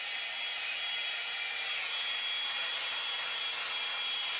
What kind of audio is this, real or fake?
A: real